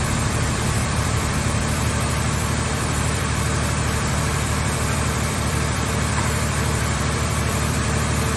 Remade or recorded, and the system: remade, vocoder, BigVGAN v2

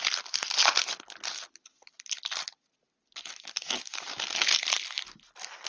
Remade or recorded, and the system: recorded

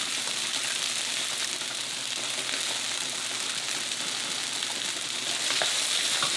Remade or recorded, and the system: recorded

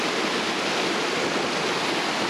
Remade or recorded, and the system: recorded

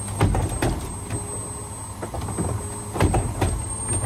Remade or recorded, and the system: recorded